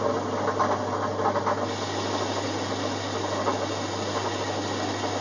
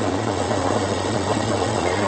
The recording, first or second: first